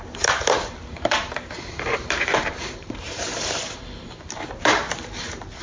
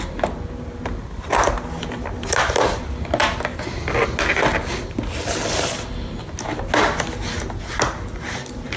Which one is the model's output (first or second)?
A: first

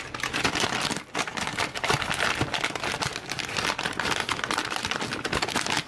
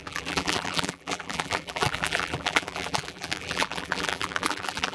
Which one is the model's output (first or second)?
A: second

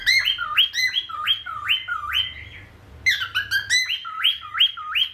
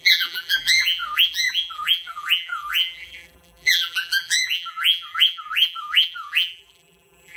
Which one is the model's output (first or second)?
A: second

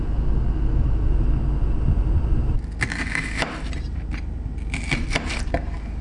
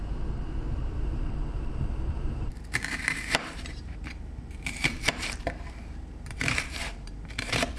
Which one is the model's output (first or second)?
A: second